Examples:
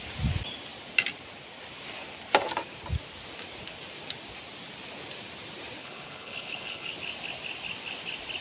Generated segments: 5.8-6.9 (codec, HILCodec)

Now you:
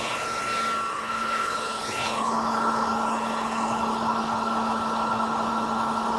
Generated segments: 0.0-0.4 (codec, HILCodec); 0.9-6.2

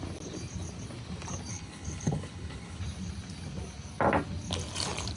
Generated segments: 1.5-2.8 (codec, HILCodec)

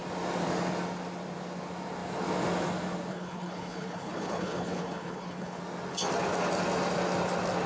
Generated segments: 3.1-5.6 (codec, HILCodec)

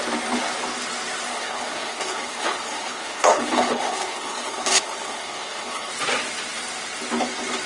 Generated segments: 1.3-5.9 (codec, HILCodec)

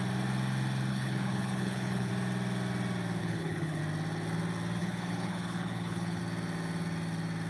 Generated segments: 0.9-2.1 (codec, HILCodec); 3.2-3.8; 4.8-6.2

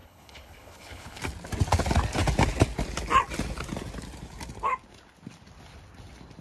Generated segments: 0.0-1.2 (codec, HILCodec)

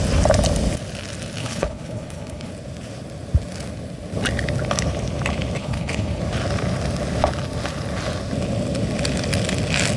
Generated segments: 1.4-2.5 (codec, HILCodec); 5.6-6.2